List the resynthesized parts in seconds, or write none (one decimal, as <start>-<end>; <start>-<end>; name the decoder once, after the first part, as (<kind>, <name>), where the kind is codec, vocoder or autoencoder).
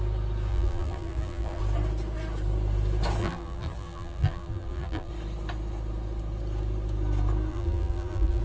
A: 0.5-1.6 (vocoder, BigVGAN v2); 3.2-5.1; 7.5-8.4